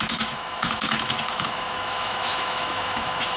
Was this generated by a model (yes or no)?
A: yes